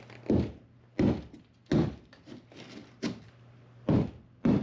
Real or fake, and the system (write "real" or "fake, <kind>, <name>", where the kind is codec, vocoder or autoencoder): real